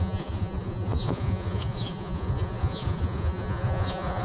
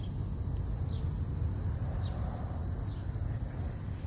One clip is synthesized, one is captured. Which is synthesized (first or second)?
first